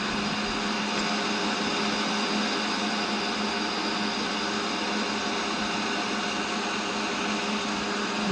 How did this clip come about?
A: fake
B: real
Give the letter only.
B